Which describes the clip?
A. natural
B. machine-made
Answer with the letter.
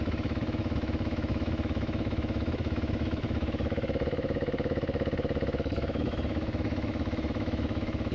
B